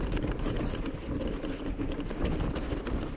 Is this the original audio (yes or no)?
yes